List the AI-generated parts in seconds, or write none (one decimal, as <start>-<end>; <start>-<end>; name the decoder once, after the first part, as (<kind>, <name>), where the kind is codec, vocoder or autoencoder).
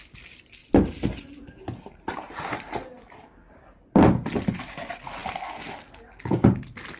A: 0.0-0.6 (vocoder, BigVGAN v2); 4.3-7.0